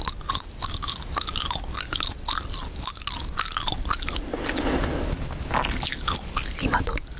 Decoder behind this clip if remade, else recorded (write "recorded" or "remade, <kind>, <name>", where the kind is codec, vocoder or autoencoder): recorded